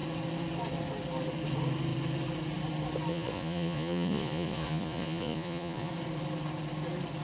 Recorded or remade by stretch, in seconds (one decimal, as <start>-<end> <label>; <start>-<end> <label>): 0.0-3.1 recorded; 3.1-5.9 remade; 5.9-7.2 recorded